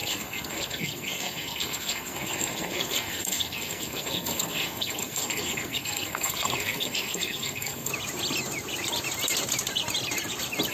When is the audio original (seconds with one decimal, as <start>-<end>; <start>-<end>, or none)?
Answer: 7.9-10.7